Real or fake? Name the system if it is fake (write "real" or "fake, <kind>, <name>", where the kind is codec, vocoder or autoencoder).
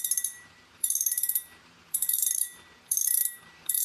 fake, vocoder, BigVGAN v2